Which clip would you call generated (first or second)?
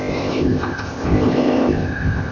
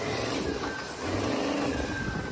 first